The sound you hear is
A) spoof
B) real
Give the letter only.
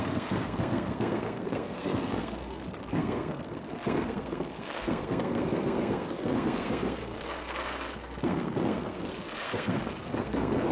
A